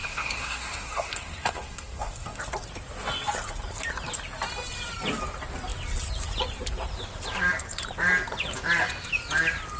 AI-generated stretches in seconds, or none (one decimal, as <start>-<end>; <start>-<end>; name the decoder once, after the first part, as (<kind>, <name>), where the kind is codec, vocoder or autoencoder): 0.0-2.4 (codec, SNAC)